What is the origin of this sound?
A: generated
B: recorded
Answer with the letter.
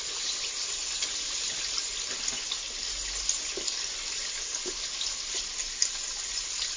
B